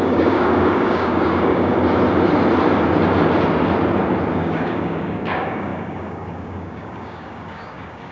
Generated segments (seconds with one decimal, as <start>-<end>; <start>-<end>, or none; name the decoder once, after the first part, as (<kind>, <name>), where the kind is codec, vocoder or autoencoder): 0.0-1.7 (codec, DAC); 4.3-8.1